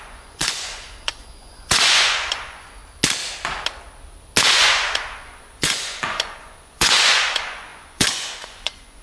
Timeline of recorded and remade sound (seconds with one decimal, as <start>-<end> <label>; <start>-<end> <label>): 0.0-2.8 remade; 2.8-4.4 recorded; 4.4-9.0 remade